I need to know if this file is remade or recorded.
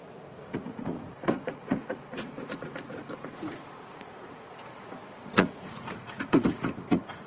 remade